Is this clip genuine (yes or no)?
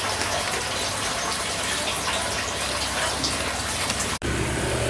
yes